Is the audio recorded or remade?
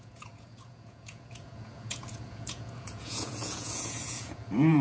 remade